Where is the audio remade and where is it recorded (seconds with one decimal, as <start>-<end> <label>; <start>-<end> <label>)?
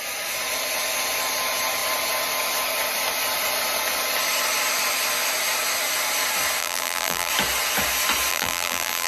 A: 0.0-6.6 recorded; 6.6-7.3 remade; 7.3-8.3 recorded; 8.3-9.1 remade